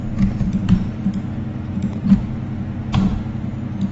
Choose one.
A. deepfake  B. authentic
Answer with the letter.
B